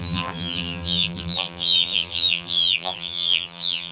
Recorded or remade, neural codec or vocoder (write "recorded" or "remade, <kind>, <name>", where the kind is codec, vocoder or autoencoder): remade, vocoder, BigVGAN v2